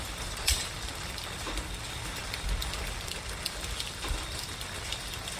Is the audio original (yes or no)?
no